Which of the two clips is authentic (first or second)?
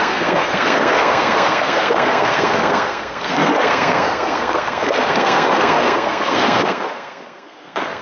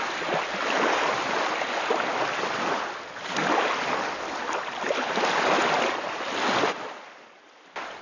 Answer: second